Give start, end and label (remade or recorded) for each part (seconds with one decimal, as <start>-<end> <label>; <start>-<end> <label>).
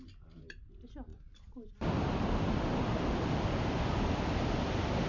0.0-5.1 recorded